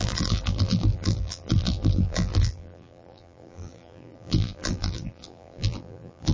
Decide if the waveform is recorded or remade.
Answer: remade